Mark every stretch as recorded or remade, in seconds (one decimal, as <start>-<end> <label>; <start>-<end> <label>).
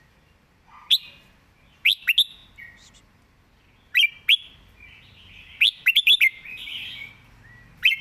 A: 0.0-6.5 recorded; 6.5-7.1 remade; 7.1-8.0 recorded